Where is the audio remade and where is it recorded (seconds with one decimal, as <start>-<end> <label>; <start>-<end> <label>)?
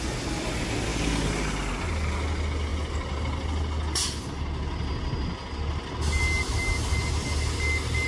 0.0-8.1 recorded